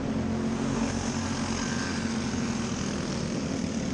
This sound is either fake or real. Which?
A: real